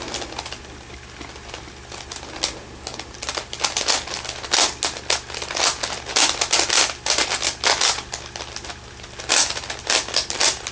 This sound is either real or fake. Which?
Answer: real